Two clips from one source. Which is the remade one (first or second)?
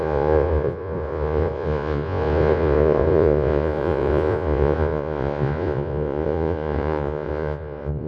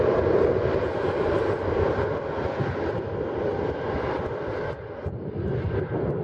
first